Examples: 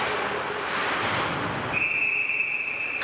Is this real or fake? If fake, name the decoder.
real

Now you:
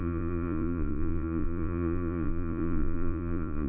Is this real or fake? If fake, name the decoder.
fake, vocoder, Vocos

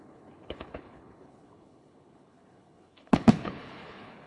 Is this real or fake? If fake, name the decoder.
fake, codec, HILCodec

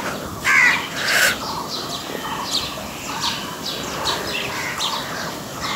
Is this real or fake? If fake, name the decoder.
real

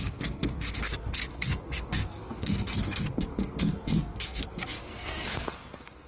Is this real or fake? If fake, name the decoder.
fake, codec, SNAC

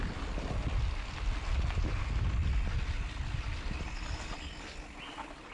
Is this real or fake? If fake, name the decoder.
real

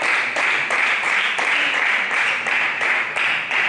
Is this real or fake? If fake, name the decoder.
fake, vocoder, BigVGAN v2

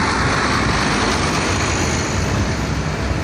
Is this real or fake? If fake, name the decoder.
real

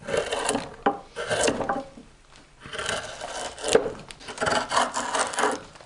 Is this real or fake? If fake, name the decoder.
real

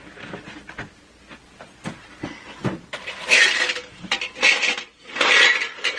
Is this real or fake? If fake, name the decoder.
real